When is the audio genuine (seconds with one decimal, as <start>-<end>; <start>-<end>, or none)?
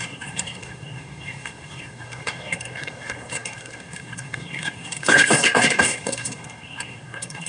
none